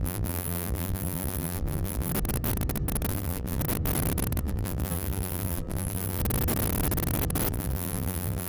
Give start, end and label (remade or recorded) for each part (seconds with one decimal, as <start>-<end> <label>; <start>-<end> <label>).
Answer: 0.0-2.1 remade; 2.1-3.1 recorded; 3.1-3.6 remade; 3.6-4.4 recorded; 4.4-6.2 remade; 6.2-7.5 recorded; 7.5-8.5 remade